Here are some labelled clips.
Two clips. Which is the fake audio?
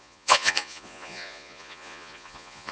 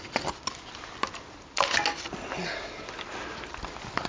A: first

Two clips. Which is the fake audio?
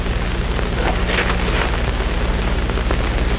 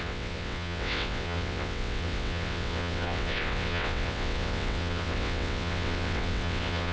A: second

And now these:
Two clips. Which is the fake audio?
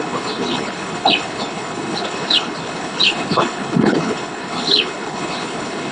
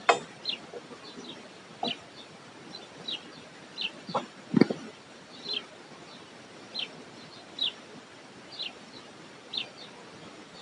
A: first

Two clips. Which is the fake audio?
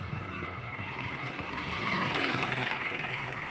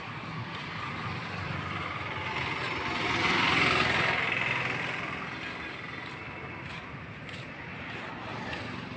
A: first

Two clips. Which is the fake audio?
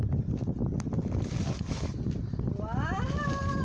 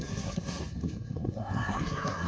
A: second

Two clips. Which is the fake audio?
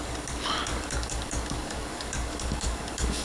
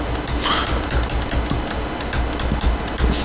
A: first